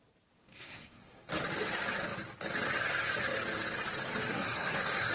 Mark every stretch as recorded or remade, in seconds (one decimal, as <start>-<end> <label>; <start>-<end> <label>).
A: 0.0-0.5 recorded; 0.5-1.3 remade; 1.3-4.3 recorded; 4.3-5.1 remade